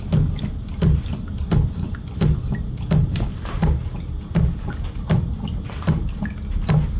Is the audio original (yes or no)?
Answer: yes